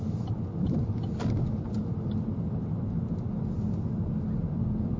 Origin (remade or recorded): recorded